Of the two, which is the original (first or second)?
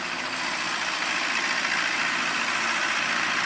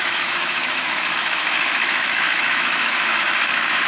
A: first